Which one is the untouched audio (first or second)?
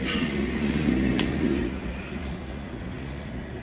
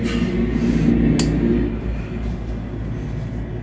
second